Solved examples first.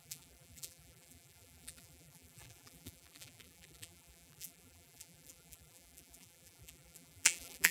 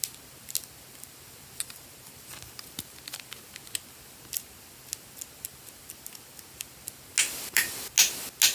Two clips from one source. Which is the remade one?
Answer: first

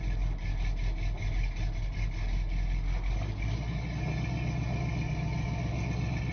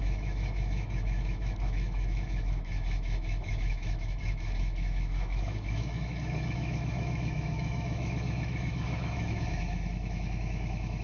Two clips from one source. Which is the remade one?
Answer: second